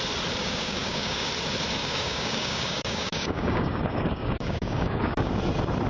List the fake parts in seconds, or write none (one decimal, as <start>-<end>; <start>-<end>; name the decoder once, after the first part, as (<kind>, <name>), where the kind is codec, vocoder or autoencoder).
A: 0.4-1.3 (codec, DAC); 1.8-5.3